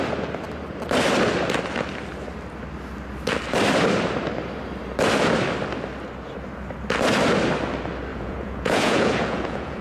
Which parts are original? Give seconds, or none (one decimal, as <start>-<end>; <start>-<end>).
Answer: 0.0-8.1